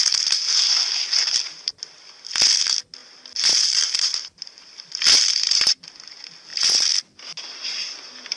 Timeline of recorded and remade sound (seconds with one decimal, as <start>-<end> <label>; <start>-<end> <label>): 0.0-3.0 recorded; 3.0-4.9 remade; 4.9-6.5 recorded; 6.5-8.4 remade

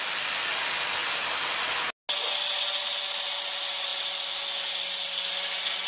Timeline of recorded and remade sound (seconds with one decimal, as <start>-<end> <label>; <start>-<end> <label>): 0.0-1.0 recorded; 1.0-1.5 remade; 1.5-5.9 recorded

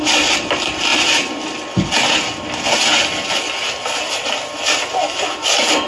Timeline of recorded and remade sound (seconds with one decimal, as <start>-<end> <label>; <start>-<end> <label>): 0.0-5.9 recorded